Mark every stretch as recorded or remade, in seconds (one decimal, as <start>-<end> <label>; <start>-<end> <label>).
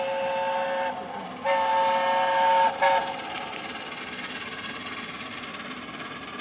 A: 0.0-6.4 recorded